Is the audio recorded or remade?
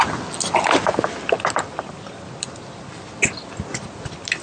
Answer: recorded